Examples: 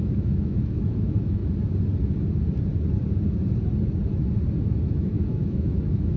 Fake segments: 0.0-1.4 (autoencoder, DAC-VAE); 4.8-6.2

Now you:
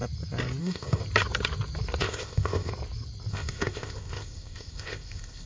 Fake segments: 0.6-1.0 (codec, ZipCodec); 2.0-2.7; 3.3-5.5

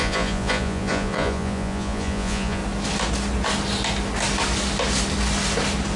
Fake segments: 0.0-2.6 (vocoder, Vocos)

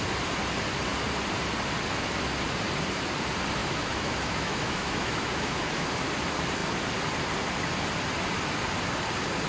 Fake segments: 3.6-5.9 (autoencoder, DAC-VAE)

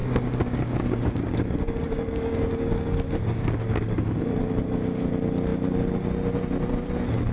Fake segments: 0.0-4.4 (codec, DAC)

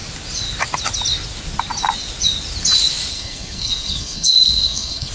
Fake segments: 3.1-5.1 (codec, SNAC)